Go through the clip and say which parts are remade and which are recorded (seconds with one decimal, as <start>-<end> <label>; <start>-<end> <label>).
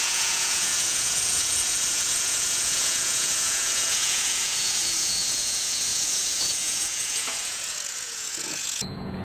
0.0-9.2 remade